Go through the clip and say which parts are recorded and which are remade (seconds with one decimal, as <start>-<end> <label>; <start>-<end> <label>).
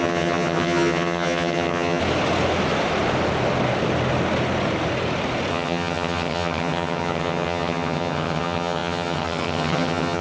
0.0-2.0 remade; 2.0-5.5 recorded; 5.5-10.2 remade